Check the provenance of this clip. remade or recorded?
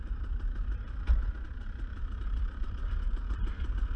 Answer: remade